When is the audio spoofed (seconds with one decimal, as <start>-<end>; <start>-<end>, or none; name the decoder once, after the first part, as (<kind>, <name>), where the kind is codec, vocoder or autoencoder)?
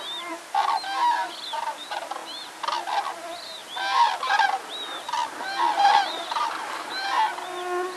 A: none